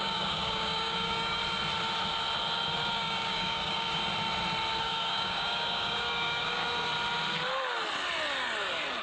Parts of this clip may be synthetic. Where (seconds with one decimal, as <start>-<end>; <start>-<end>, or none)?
0.0-1.4; 2.9-4.0; 4.8-6.6

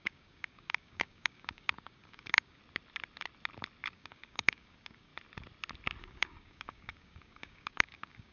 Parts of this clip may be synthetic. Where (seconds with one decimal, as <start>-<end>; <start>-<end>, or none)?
0.0-2.6; 3.9-5.1; 6.0-8.3

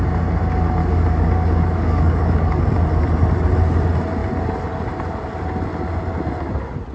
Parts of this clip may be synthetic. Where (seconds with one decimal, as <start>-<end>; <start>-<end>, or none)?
0.8-2.6

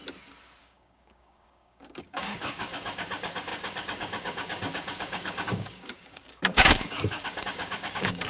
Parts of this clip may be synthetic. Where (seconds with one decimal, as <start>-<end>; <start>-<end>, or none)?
0.6-8.3

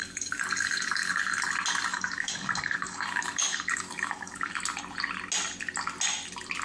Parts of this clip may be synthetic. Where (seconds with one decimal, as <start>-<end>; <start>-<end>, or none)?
0.0-1.2; 1.9-4.5

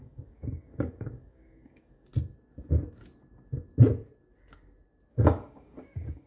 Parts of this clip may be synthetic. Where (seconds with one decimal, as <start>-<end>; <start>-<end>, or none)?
0.0-2.1; 5.1-6.3